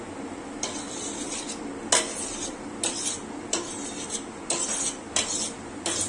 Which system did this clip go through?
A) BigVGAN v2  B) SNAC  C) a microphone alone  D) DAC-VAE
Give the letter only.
C